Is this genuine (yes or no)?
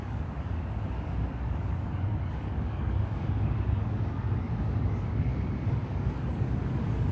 no